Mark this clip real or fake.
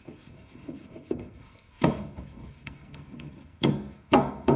fake